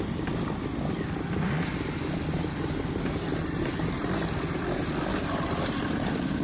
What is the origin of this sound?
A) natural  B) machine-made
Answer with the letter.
A